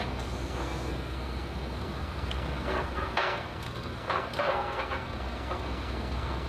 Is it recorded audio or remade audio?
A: remade